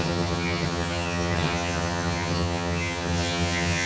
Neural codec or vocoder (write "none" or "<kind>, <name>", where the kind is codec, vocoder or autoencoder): vocoder, HiFi-GAN